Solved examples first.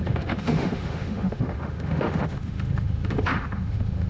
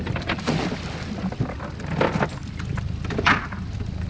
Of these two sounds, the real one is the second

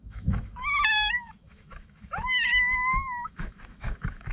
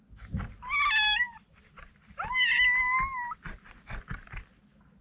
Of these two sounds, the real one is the second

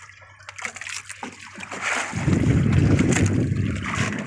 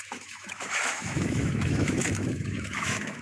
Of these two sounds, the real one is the first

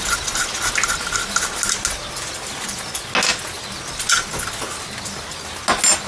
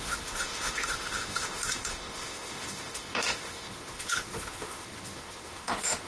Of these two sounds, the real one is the first